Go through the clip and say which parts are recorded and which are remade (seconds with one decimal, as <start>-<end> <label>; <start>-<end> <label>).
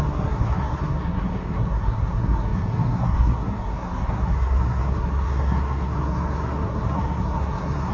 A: 0.0-7.9 remade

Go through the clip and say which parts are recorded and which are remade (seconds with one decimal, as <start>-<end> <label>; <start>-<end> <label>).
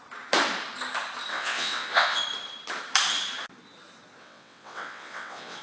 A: 0.0-1.3 recorded; 1.3-2.2 remade; 2.2-4.2 recorded; 4.2-5.6 remade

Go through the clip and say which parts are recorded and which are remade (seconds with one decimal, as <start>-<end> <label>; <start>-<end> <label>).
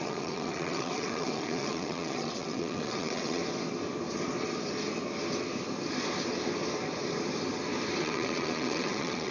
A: 0.0-3.4 remade; 3.4-8.0 recorded; 8.0-9.3 remade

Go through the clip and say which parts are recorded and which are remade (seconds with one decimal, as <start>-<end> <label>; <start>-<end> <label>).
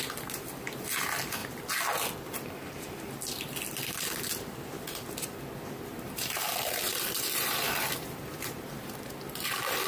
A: 0.0-5.9 recorded; 5.9-8.8 remade; 8.8-9.9 recorded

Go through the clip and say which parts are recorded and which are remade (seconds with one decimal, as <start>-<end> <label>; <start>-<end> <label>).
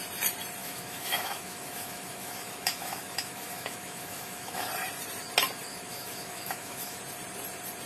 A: 0.0-0.6 recorded; 0.6-4.7 remade; 4.7-5.7 recorded; 5.7-7.0 remade; 7.0-7.9 recorded